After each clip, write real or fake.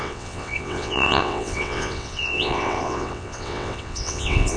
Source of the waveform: fake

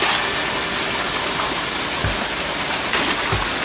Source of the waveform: real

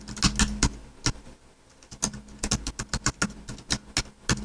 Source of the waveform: real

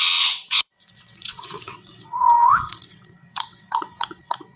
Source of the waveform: fake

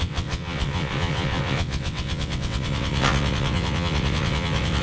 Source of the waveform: fake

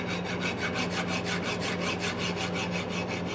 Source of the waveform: real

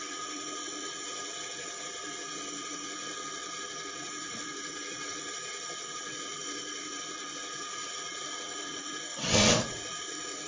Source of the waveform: fake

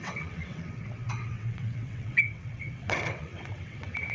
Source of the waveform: fake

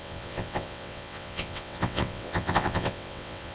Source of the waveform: fake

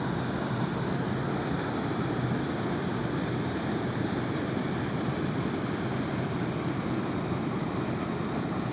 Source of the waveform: real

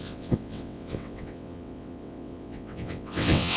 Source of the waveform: fake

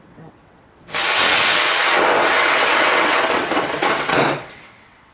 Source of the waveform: fake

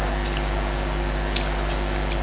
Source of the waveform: real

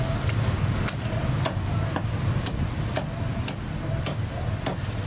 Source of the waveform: real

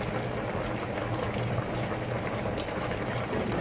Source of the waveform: real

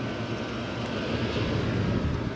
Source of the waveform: real